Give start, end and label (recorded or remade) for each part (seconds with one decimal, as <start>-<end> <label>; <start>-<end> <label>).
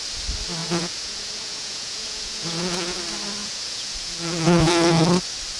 0.0-0.6 recorded; 0.6-3.0 remade; 3.0-3.4 recorded; 3.4-4.7 remade; 4.7-5.6 recorded